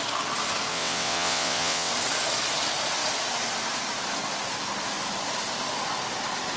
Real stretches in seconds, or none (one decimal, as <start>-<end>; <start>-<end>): 0.0-0.7; 1.9-6.6